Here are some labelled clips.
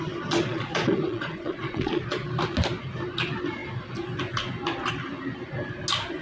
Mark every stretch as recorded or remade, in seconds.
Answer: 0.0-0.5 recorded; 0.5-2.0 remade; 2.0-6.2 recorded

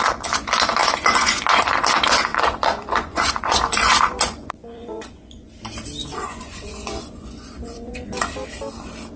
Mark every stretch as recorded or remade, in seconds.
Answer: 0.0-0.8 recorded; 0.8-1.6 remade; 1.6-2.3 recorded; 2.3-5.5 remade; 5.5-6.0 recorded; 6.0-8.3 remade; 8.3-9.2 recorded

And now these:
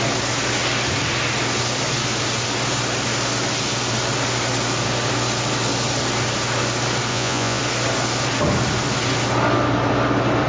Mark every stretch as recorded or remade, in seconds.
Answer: 0.0-7.1 recorded; 7.1-7.6 remade; 7.6-10.5 recorded